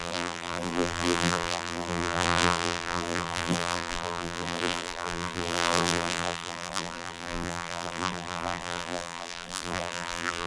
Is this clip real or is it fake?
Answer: fake